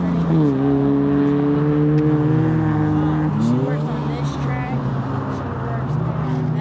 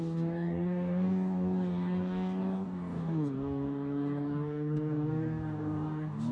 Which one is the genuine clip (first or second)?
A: first